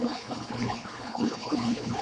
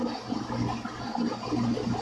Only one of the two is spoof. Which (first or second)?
first